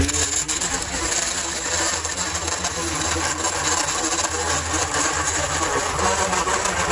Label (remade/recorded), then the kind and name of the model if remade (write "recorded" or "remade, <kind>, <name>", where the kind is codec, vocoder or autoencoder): recorded